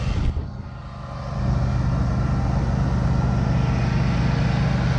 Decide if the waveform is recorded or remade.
recorded